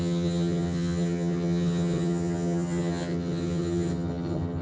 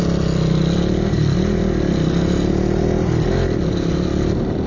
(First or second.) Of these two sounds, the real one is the second